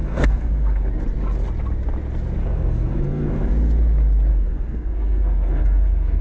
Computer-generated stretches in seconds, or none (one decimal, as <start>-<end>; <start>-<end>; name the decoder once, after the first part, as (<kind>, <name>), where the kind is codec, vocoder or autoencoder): 0.0-0.9 (codec, SNAC); 2.4-3.5; 4.3-6.2